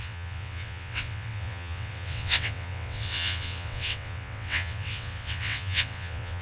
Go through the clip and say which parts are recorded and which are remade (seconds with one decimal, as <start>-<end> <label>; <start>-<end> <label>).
0.0-6.4 remade